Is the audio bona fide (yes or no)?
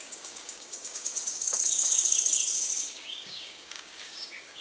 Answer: no